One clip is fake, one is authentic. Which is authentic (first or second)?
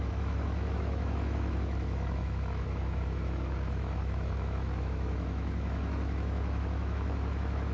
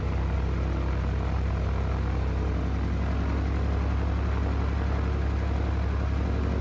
second